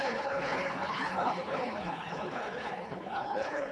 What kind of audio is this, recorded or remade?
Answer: remade